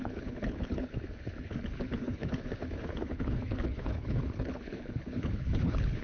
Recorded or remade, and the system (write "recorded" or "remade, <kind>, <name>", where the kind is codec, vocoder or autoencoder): remade, codec, HILCodec